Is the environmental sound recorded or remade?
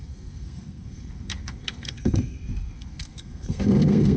remade